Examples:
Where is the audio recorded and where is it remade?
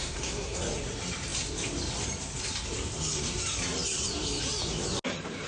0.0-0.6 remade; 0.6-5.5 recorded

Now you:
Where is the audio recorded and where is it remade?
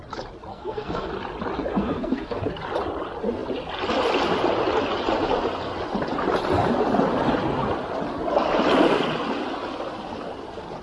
0.0-0.5 recorded; 0.5-1.1 remade; 1.1-1.7 recorded; 1.7-2.4 remade; 2.4-10.8 recorded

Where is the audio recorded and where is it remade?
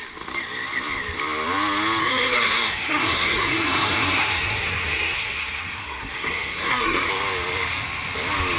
0.0-2.0 recorded; 2.0-7.1 remade; 7.1-8.6 recorded